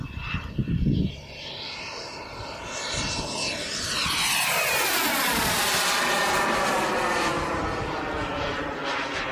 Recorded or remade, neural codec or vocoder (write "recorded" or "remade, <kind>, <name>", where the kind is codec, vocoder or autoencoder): recorded